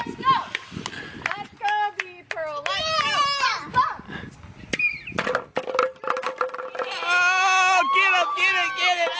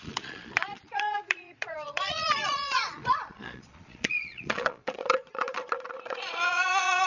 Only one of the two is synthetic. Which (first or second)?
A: second